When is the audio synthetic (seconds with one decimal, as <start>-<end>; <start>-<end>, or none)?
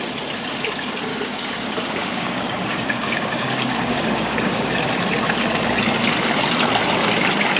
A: 1.1-4.8